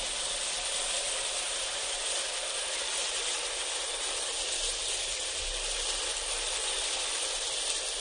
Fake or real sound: real